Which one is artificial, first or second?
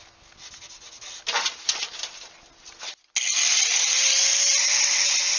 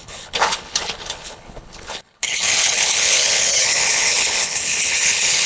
second